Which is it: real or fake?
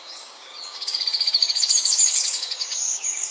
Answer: fake